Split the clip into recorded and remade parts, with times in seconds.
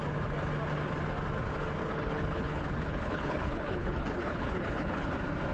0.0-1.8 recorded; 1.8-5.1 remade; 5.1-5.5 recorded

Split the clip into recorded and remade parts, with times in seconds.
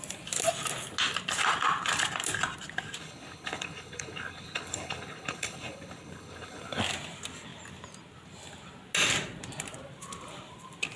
0.0-3.0 recorded; 3.0-6.8 remade; 6.8-11.0 recorded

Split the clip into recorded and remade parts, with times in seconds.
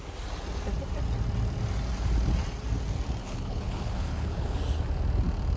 0.0-3.2 recorded; 3.2-4.6 remade; 4.6-5.6 recorded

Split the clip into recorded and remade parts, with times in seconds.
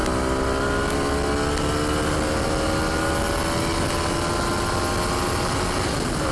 0.0-6.3 recorded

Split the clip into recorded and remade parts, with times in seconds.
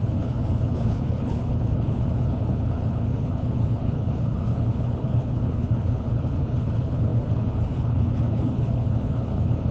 0.0-9.7 remade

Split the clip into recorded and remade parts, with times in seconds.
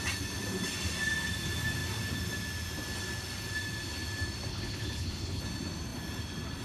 0.0-4.5 recorded; 4.5-5.4 remade; 5.4-6.6 recorded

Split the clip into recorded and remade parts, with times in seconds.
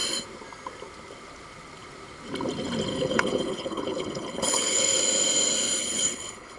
0.0-2.9 recorded; 2.9-5.0 remade; 5.0-5.8 recorded; 5.8-6.6 remade